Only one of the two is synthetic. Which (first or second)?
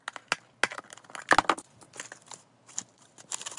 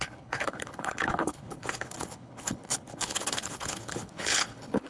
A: second